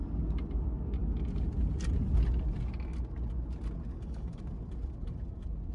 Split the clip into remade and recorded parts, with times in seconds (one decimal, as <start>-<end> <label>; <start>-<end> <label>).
0.0-3.9 recorded; 3.9-4.4 remade; 4.4-5.7 recorded